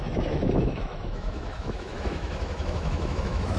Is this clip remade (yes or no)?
yes